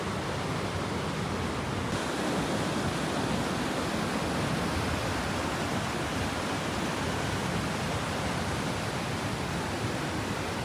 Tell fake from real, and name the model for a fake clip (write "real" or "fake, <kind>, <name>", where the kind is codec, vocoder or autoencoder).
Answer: real